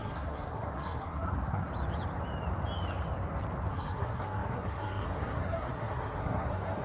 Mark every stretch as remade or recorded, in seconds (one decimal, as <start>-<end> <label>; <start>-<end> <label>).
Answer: 0.0-1.7 remade; 1.7-3.7 recorded; 3.7-6.8 remade